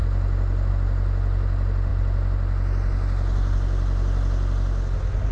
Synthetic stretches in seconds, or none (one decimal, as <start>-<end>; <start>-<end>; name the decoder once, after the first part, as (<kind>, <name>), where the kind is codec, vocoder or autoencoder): none